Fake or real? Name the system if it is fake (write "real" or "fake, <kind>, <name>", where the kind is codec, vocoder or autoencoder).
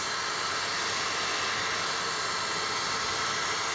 real